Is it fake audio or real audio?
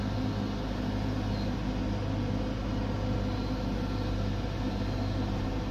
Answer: real